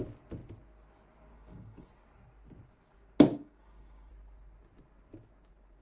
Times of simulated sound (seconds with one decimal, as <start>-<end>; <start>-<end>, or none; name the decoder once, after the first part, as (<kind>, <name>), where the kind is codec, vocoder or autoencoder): 1.3-1.9 (codec, DAC); 3.3-4.1